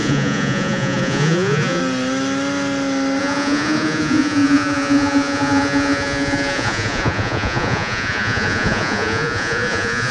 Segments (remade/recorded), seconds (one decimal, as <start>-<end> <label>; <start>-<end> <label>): 0.0-1.8 remade; 1.8-3.2 recorded; 3.2-10.1 remade